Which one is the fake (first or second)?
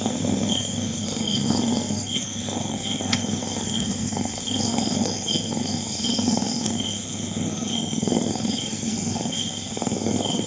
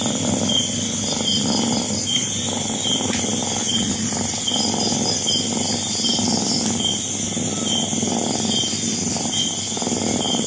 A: first